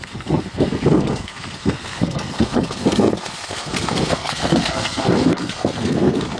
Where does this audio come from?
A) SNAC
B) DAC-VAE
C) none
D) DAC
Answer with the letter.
A